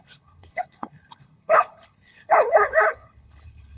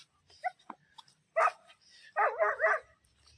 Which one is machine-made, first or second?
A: first